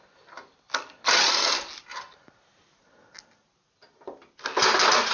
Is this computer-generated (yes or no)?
no